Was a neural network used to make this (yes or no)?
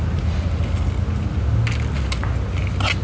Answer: no